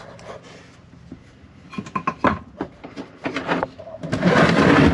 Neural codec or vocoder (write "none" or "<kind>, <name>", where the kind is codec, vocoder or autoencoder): none